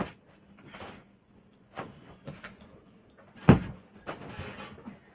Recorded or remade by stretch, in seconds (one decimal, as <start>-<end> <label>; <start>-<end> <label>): 0.0-1.0 recorded; 1.0-4.1 remade; 4.1-5.1 recorded